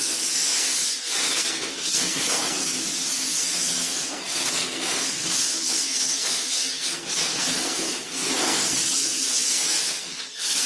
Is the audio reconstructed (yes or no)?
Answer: yes